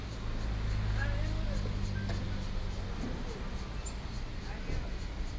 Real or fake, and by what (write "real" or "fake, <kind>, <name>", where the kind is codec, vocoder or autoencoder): real